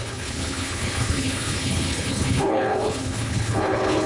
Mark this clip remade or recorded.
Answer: remade